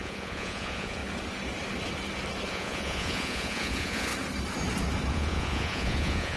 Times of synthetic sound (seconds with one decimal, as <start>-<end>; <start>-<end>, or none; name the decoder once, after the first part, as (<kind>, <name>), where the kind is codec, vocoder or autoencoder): 0.0-1.0 (vocoder, Vocos); 2.5-4.1; 5.1-6.4